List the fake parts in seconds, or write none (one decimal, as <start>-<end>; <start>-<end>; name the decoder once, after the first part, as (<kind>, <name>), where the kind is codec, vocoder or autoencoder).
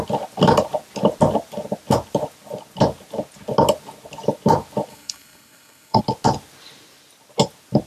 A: 4.9-6.0 (codec, SNAC)